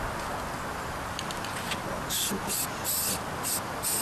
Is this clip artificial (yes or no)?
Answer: no